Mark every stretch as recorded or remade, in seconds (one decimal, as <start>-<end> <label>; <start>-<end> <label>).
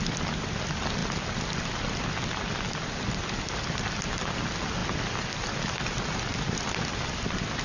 0.0-7.6 recorded